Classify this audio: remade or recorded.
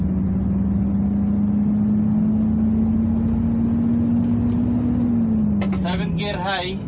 recorded